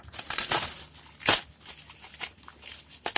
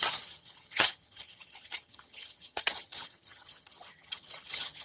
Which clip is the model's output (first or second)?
second